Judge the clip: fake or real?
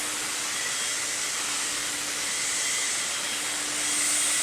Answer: real